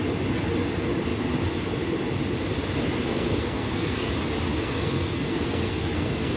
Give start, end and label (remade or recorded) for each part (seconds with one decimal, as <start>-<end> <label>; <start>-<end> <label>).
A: 0.0-3.1 recorded; 3.1-4.1 remade; 4.1-4.5 recorded; 4.5-6.4 remade